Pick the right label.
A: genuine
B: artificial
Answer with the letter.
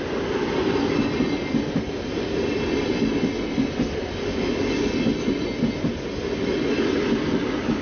A